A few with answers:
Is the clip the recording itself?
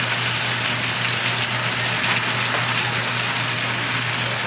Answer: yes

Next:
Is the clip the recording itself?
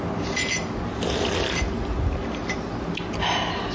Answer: yes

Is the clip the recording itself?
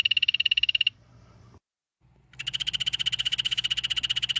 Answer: yes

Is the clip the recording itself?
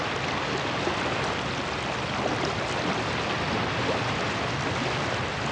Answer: yes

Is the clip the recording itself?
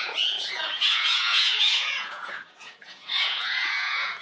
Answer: no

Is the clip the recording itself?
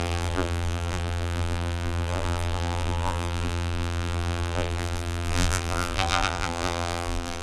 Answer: no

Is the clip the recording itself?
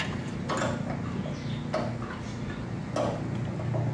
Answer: yes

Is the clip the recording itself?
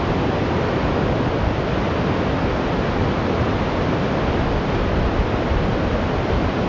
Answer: yes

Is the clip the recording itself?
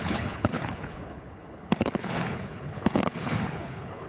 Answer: no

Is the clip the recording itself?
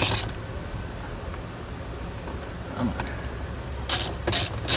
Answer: yes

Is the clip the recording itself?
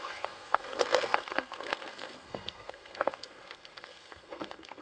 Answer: no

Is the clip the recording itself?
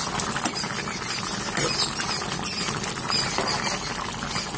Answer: yes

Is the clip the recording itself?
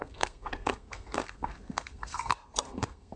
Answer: no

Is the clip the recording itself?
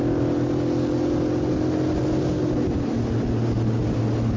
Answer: yes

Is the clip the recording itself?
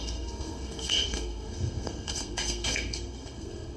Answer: no